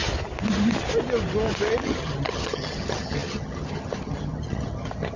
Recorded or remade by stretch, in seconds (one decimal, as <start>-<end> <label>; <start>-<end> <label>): 0.0-1.8 recorded; 1.8-5.2 remade